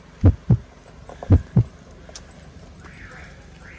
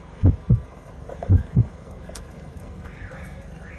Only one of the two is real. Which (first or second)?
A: first